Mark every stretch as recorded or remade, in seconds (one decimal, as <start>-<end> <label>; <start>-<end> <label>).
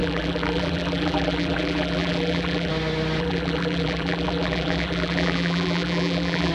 0.0-2.7 remade; 2.7-3.2 recorded; 3.2-6.5 remade